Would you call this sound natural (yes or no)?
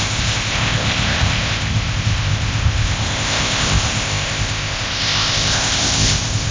no